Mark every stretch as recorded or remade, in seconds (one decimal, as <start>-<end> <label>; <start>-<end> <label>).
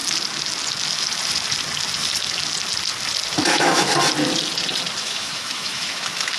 0.0-3.5 recorded; 3.5-3.9 remade; 3.9-5.0 recorded; 5.0-6.4 remade